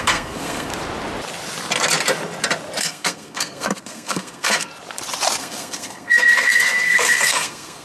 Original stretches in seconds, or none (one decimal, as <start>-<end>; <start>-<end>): 0.7-2.8; 4.7-5.4